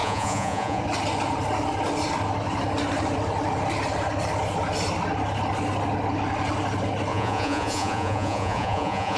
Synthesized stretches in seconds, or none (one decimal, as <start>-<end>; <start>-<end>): 0.0-0.8; 7.1-9.2

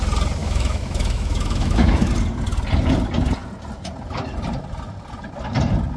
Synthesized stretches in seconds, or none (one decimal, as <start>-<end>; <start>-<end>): 0.4-2.1